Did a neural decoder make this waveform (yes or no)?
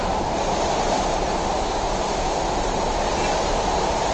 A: no